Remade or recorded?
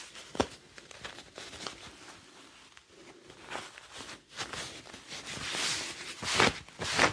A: recorded